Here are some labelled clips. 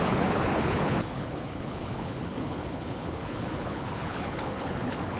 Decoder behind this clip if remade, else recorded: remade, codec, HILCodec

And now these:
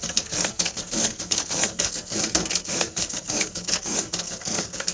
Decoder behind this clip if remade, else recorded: remade, codec, SNAC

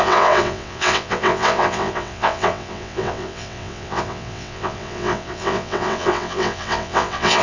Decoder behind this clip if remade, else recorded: remade, vocoder, WaveNeXt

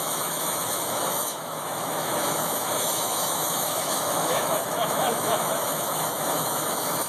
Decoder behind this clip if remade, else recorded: remade, autoencoder, DAC-VAE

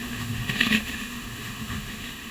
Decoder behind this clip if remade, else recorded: remade, autoencoder, DAC-VAE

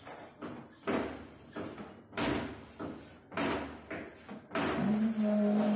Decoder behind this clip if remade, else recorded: recorded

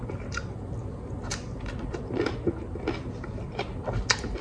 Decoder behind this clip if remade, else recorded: recorded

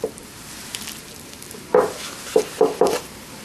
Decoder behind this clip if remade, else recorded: remade, vocoder, BigVGAN v2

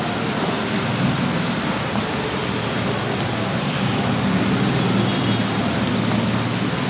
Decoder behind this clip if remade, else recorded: recorded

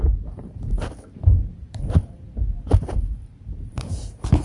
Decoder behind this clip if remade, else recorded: remade, vocoder, BigVGAN v2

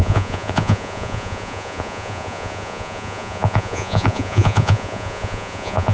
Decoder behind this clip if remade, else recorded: remade, vocoder, Vocos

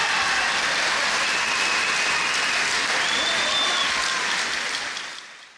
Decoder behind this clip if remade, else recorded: recorded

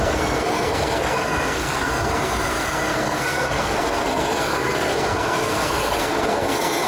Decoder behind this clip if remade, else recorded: remade, codec, SNAC